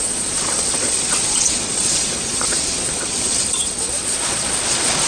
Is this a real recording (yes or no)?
no